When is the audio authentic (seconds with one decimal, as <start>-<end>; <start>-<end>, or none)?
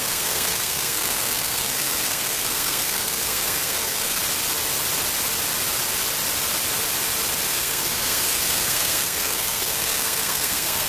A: 4.2-7.5